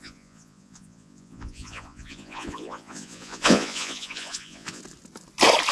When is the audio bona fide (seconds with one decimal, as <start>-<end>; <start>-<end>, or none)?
4.8-5.7